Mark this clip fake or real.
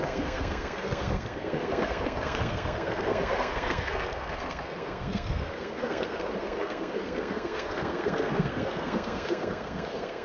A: fake